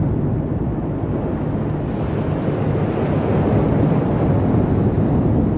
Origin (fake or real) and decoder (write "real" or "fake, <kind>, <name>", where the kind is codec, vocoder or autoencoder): real